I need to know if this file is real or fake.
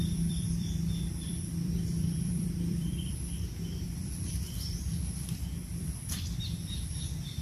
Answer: fake